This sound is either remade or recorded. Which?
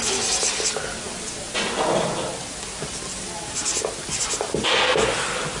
recorded